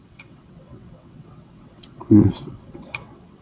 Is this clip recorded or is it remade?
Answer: remade